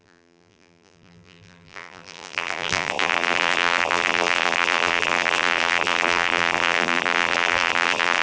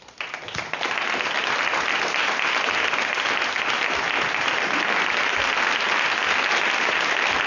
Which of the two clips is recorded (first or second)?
second